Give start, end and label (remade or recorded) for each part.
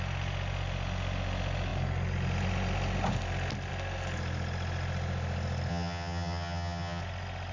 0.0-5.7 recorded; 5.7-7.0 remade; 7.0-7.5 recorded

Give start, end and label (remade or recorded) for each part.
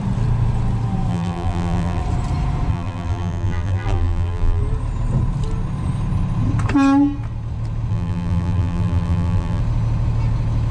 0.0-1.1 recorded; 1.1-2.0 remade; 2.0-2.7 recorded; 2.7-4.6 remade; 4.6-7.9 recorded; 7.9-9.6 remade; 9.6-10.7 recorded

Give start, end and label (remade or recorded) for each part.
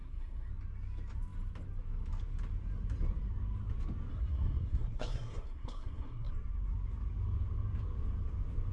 0.0-0.5 remade; 0.5-4.1 recorded; 4.1-6.3 remade; 6.3-8.7 recorded